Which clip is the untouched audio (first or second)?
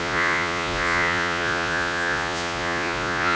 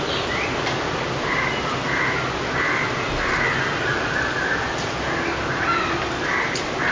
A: second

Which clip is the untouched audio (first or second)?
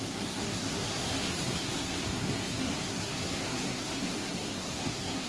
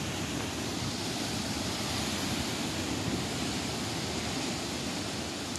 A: second